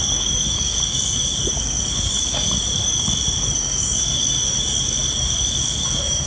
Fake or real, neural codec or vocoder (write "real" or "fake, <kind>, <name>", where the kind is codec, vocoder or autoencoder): fake, codec, DAC